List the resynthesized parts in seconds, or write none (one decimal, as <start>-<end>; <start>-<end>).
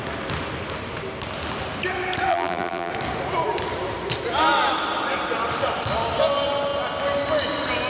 2.3-2.9